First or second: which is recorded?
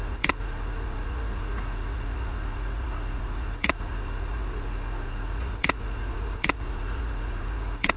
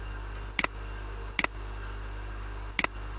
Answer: second